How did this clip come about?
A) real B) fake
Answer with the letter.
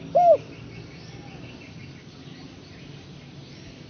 A